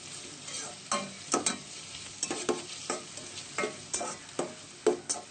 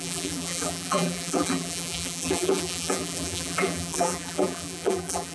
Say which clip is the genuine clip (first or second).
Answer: first